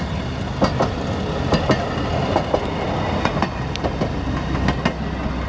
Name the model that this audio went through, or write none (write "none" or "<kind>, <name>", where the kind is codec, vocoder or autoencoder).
none